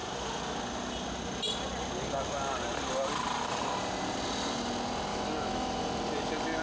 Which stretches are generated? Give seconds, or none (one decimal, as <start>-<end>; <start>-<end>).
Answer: 5.1-5.8